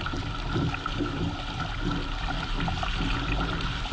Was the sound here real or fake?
real